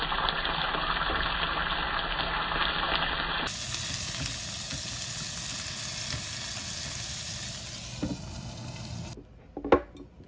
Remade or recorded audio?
recorded